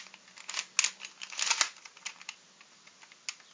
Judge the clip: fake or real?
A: real